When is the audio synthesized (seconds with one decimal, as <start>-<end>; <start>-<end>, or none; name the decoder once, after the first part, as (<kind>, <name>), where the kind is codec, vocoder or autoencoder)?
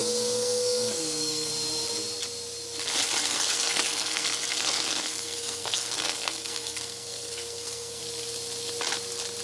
0.0-1.5 (codec, SNAC); 3.2-8.0